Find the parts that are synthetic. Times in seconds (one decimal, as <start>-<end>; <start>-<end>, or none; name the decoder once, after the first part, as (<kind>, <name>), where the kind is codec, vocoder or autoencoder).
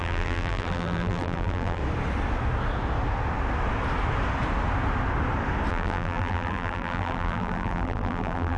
0.0-1.8 (vocoder, BigVGAN v2); 5.7-8.6